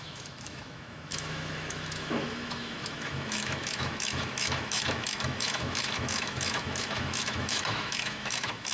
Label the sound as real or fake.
fake